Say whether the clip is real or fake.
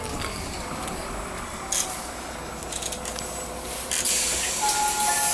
real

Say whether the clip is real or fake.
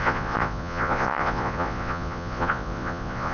fake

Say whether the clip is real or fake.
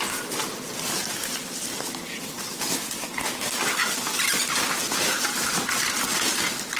real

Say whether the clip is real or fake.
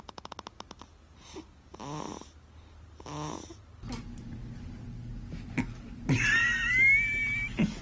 real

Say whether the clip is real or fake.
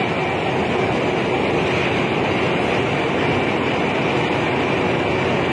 real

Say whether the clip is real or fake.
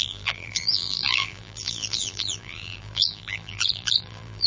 fake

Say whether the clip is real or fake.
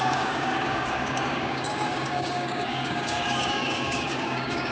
fake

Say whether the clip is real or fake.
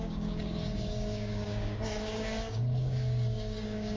fake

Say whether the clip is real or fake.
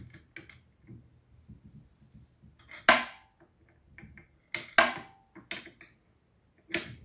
real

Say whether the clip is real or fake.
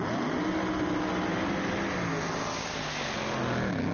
real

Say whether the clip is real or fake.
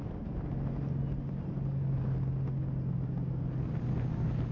real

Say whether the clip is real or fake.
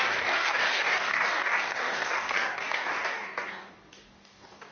fake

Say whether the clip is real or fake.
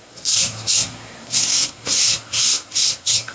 fake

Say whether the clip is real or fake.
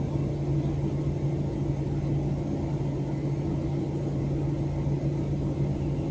real